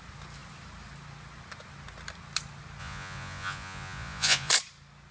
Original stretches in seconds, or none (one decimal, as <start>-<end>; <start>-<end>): 0.0-2.8; 4.5-5.1